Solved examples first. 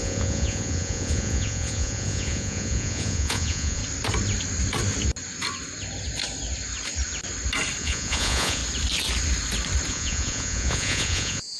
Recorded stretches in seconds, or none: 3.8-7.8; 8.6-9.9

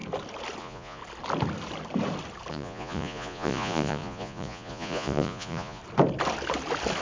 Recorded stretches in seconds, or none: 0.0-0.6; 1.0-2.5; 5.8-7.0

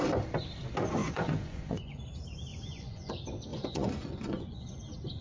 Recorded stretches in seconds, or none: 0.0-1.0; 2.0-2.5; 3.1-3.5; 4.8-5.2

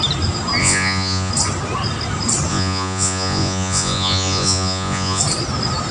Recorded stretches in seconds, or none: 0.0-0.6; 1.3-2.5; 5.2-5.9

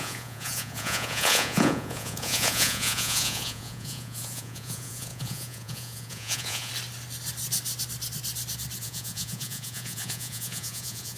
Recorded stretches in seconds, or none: 6.7-8.8